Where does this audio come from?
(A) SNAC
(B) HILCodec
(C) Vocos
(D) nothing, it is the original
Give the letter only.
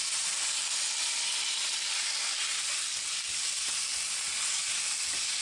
D